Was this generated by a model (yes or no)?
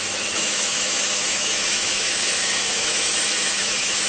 yes